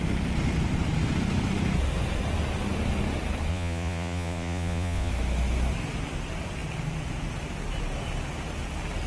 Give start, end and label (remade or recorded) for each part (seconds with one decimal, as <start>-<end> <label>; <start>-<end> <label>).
0.0-3.5 recorded; 3.5-5.1 remade; 5.1-9.1 recorded